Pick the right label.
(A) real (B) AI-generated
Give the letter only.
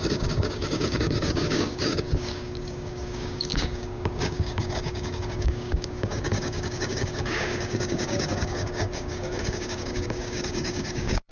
B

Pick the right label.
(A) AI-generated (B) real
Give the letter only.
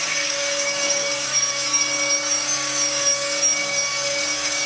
A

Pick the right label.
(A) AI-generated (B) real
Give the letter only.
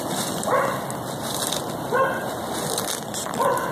B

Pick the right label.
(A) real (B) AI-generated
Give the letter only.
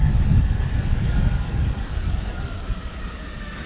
B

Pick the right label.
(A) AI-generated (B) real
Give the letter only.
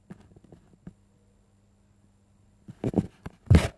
B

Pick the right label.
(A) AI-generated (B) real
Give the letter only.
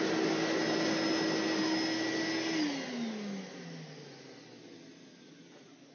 B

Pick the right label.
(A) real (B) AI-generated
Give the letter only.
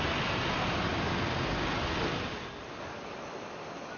A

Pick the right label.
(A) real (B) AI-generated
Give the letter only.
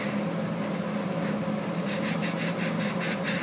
A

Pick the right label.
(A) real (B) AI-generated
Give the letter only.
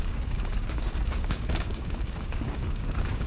B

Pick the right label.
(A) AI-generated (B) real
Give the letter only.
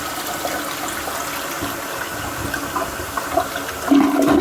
B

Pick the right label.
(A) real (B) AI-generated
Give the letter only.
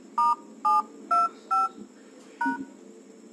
A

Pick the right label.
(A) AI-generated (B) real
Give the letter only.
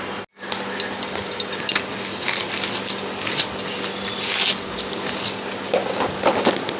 B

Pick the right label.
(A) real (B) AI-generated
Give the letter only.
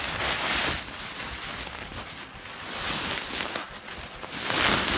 A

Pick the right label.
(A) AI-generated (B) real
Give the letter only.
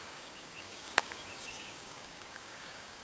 A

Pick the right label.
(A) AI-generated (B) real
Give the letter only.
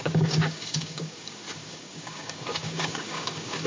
A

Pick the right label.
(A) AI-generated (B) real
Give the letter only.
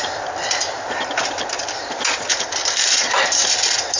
B